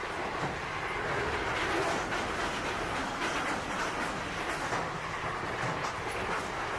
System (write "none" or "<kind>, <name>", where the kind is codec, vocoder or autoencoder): none